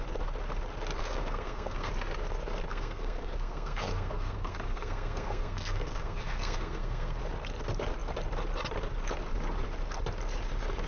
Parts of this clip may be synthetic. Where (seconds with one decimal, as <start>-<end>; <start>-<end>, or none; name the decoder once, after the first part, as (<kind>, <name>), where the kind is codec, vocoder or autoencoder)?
1.0-1.9 (codec, SNAC); 2.7-7.2